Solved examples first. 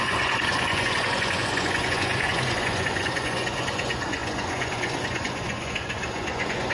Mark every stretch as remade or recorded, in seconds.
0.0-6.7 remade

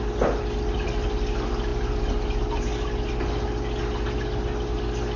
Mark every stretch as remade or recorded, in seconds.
0.0-5.2 recorded